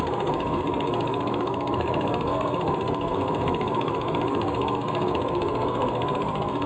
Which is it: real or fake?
fake